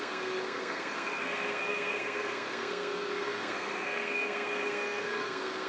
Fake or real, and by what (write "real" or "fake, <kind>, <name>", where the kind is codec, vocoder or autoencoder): fake, codec, SNAC